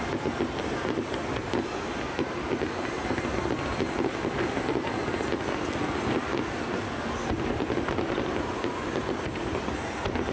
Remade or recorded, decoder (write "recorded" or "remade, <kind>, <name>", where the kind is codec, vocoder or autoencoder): recorded